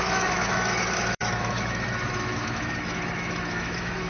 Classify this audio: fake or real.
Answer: fake